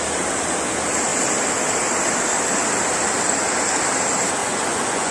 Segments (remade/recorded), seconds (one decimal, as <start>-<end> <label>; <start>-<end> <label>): 0.0-4.4 recorded; 4.4-5.1 remade